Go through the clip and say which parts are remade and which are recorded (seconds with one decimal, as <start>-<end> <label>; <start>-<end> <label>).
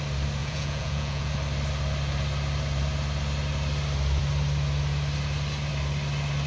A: 0.0-0.4 recorded; 0.4-1.3 remade; 1.3-6.5 recorded